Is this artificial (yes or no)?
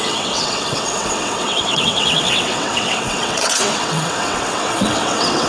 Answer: yes